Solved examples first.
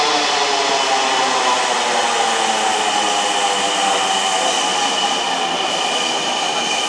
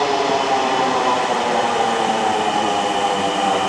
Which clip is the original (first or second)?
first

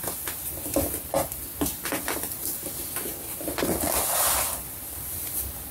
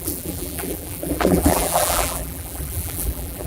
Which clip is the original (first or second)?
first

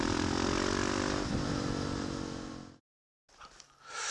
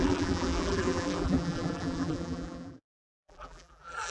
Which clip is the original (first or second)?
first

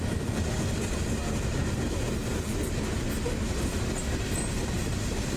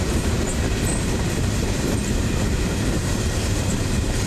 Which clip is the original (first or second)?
first